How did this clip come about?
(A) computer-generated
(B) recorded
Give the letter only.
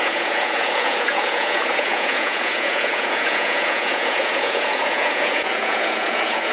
A